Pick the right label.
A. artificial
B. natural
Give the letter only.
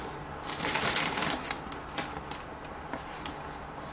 B